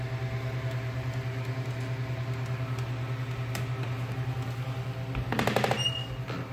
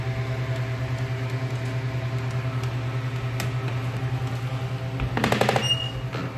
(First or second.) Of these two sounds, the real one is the second